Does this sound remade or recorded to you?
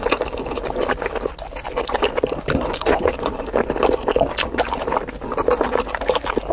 recorded